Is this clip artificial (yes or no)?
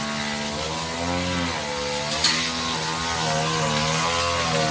no